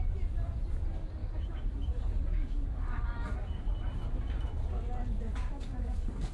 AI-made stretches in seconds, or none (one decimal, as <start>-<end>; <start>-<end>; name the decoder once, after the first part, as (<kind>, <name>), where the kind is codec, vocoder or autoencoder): 1.2-3.7 (codec, DAC); 5.5-6.3